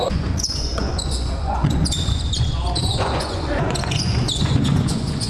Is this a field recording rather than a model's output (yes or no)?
no